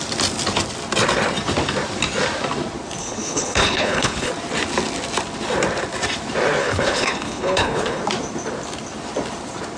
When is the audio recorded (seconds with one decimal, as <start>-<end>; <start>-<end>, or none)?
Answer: 0.0-3.0; 4.3-6.6; 8.0-9.8